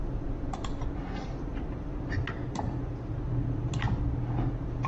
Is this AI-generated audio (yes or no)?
yes